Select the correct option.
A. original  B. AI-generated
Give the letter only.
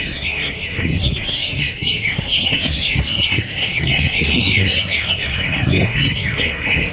B